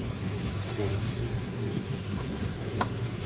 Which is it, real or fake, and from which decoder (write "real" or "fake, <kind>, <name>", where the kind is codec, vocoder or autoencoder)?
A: fake, codec, SNAC